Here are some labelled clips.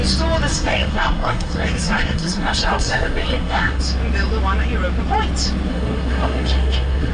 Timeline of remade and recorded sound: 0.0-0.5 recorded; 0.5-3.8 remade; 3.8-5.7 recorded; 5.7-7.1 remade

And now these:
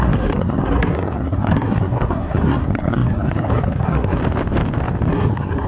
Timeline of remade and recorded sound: 0.0-4.2 remade; 4.2-5.1 recorded; 5.1-5.7 remade

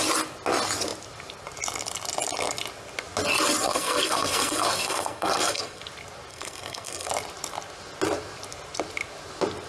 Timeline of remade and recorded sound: 0.0-3.6 recorded; 3.6-5.8 remade; 5.8-6.3 recorded; 6.3-7.1 remade; 7.1-9.7 recorded

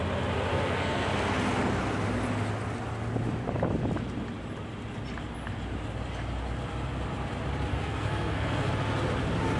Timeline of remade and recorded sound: 0.0-0.5 recorded; 0.5-1.1 remade; 1.1-7.7 recorded; 7.7-8.7 remade; 8.7-9.6 recorded

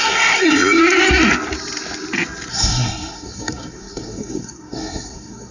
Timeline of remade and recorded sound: 0.0-0.8 remade; 0.8-2.5 recorded; 2.5-5.5 remade

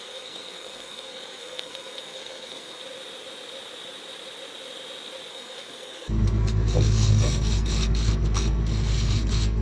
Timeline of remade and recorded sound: 0.0-2.8 remade; 2.8-5.3 recorded; 5.3-9.6 remade

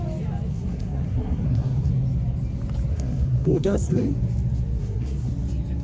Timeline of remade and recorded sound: 0.0-0.5 recorded; 0.5-1.9 remade; 1.9-2.9 recorded; 2.9-4.1 remade; 4.1-4.8 recorded; 4.8-5.3 remade; 5.3-5.8 recorded